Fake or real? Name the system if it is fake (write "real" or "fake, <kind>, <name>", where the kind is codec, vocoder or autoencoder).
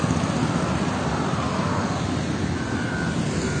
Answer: real